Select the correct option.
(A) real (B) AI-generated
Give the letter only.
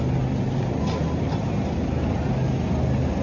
A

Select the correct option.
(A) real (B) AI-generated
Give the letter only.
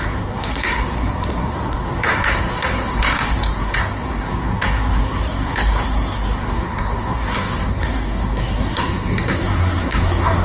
B